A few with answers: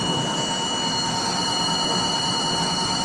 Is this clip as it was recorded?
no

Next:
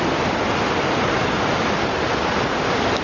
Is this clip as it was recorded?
yes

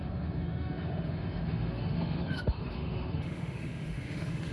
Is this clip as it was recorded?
no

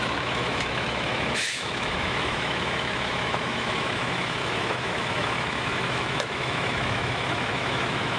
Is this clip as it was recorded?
no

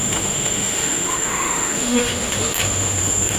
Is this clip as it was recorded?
no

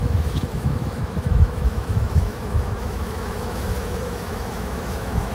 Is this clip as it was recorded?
no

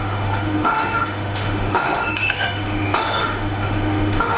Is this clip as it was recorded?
no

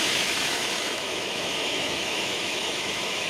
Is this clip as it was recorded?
no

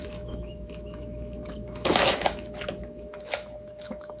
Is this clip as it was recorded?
no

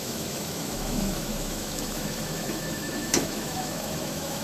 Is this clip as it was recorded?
no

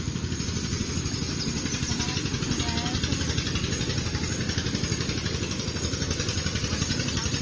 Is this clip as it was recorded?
yes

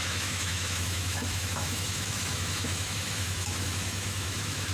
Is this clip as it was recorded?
no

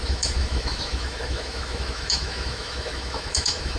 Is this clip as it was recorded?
no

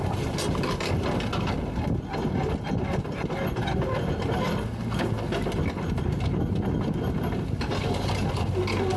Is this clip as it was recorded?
yes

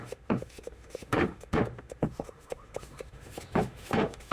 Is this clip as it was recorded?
no